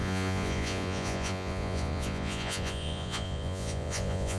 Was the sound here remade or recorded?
remade